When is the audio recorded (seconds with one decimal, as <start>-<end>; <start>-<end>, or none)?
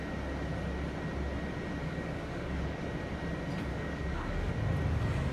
0.0-1.8; 2.8-3.7; 4.5-5.3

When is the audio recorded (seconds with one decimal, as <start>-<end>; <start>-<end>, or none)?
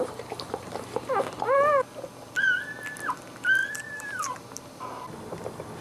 0.0-3.6; 4.2-5.8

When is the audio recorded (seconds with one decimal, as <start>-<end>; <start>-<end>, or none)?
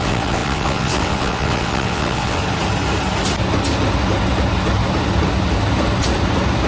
2.4-6.7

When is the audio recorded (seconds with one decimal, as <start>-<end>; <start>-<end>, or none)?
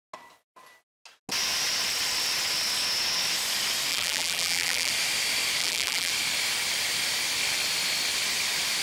0.0-3.9; 4.9-5.6; 6.1-8.8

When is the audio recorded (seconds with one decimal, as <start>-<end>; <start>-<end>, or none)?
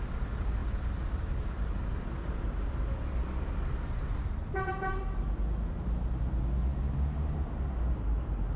0.0-8.6